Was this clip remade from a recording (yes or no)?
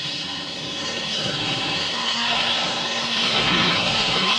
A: yes